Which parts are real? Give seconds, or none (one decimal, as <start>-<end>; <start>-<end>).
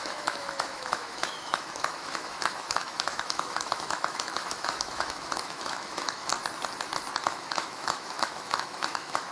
6.3-7.2